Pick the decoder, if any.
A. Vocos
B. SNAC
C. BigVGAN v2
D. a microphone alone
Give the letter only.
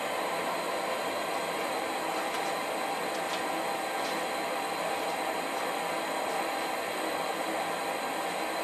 D